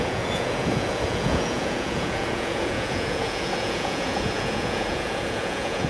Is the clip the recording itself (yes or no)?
no